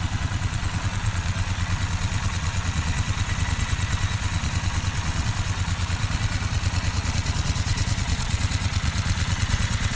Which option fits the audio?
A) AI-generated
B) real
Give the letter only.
A